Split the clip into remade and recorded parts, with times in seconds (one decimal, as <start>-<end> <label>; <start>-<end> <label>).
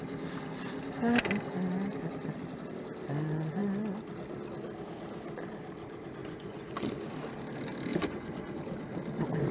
0.0-6.2 recorded; 6.2-7.1 remade; 7.1-7.9 recorded; 7.9-8.6 remade; 8.6-9.5 recorded